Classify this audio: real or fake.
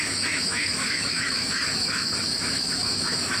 fake